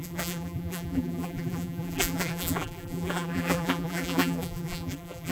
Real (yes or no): no